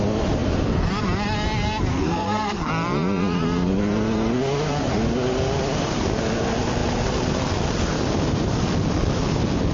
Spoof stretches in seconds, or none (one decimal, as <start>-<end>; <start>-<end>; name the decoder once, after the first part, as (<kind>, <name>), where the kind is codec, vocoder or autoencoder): 1.9-2.7 (codec, SNAC)